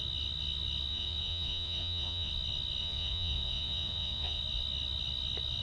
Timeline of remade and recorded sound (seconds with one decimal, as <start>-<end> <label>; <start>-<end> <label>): 0.0-0.9 recorded; 0.9-2.3 remade; 2.3-2.8 recorded; 2.8-4.4 remade; 4.4-5.6 recorded